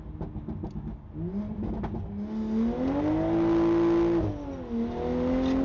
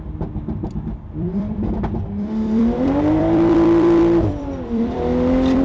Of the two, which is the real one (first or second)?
first